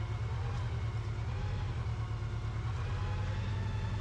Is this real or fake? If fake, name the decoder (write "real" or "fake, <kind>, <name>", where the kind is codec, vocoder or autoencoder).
real